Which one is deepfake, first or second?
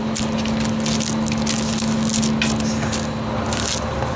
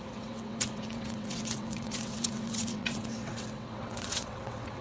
second